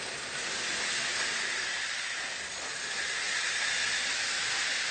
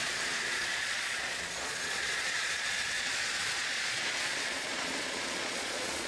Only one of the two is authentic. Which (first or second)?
first